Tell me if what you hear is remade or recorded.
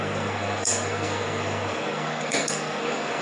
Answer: remade